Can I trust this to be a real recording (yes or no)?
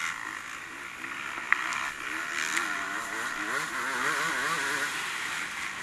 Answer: yes